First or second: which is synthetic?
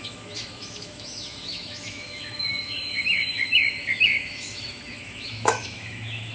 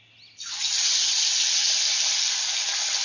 first